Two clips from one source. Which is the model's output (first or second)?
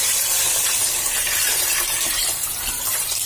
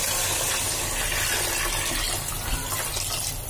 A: first